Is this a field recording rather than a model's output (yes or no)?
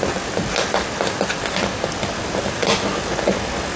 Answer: yes